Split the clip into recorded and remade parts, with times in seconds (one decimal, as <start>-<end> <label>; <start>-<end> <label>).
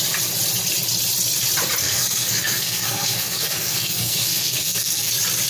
0.0-1.8 recorded; 1.8-5.1 remade; 5.1-5.5 recorded